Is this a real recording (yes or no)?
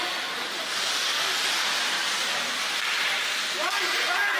yes